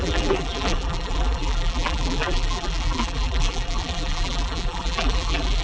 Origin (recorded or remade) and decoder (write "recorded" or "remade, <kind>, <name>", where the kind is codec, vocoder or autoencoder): remade, vocoder, BigVGAN v2